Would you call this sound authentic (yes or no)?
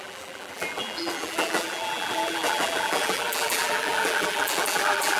no